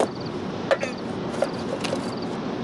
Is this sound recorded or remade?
recorded